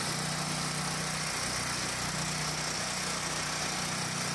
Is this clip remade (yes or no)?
no